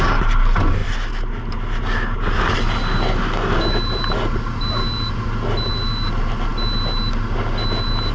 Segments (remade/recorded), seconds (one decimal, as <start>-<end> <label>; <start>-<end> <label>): 0.0-8.1 recorded